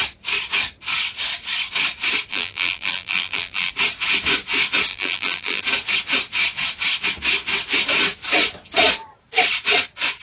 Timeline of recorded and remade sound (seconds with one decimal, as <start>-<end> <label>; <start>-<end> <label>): 0.0-2.3 recorded; 2.3-3.7 remade; 3.7-4.9 recorded; 4.9-5.6 remade; 5.6-10.2 recorded